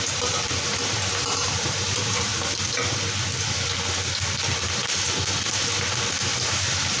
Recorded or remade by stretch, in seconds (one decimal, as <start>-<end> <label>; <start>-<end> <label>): 0.0-2.3 remade; 2.3-6.3 recorded; 6.3-7.0 remade